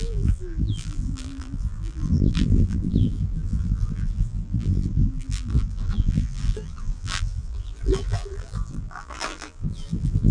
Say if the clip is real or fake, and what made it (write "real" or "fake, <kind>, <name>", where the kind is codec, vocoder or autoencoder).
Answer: fake, vocoder, BigVGAN v2